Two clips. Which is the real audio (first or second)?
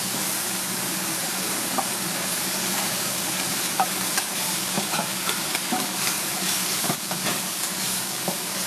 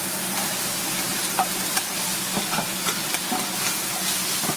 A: second